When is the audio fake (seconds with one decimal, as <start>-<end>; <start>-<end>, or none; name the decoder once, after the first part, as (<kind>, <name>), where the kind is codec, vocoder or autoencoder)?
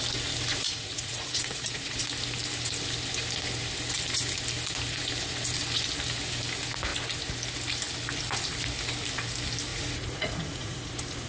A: 0.5-2.0 (vocoder, Vocos); 9.7-10.9